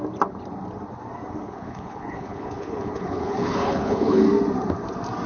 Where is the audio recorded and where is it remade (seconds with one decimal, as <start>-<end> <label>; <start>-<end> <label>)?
0.0-1.4 recorded; 1.4-4.2 remade; 4.2-5.3 recorded